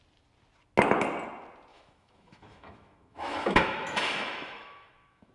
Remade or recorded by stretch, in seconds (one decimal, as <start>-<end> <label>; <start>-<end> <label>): 0.0-1.7 recorded; 1.7-5.3 remade